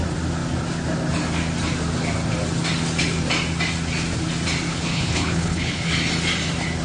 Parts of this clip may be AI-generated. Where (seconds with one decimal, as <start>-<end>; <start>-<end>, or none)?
4.7-5.9